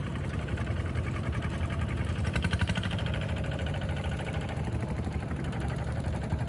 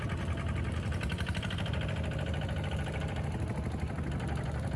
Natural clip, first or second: second